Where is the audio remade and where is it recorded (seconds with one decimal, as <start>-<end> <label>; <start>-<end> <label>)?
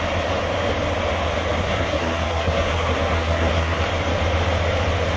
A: 0.0-1.6 recorded; 1.6-3.8 remade; 3.8-5.2 recorded